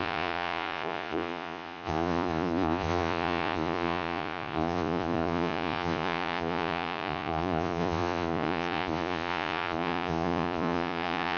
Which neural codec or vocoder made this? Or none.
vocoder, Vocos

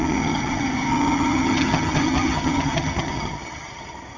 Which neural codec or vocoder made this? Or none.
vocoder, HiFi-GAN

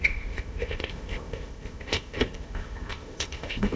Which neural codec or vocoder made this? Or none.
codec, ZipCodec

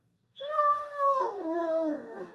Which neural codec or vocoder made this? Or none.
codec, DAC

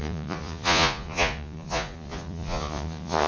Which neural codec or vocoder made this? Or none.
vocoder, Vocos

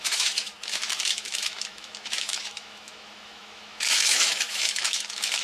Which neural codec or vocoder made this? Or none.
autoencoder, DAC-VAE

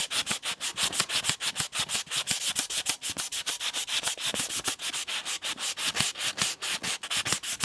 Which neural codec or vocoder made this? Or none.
none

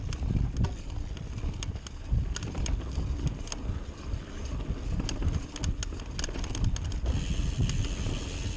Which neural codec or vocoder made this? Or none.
none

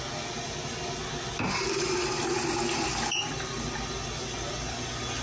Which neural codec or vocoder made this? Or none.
none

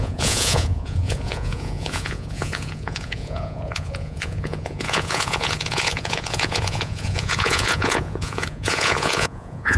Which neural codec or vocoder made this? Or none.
vocoder, Vocos